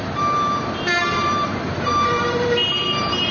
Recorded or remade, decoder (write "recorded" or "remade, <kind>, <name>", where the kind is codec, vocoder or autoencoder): remade, vocoder, BigVGAN v2